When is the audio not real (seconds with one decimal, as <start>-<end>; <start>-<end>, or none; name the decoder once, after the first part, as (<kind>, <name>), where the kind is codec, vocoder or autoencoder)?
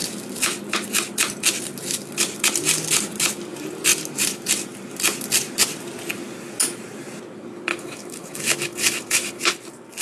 7.7-9.5 (autoencoder, DAC-VAE)